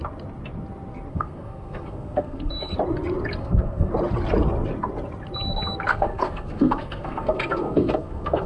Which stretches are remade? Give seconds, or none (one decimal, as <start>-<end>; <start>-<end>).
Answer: 1.1-2.7; 3.4-3.9; 5.9-8.5